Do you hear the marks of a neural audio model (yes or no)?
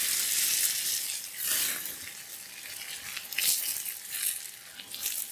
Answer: no